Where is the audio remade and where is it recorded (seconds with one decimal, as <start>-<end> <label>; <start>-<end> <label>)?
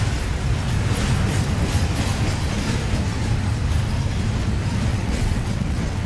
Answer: 0.0-4.9 recorded; 4.9-6.1 remade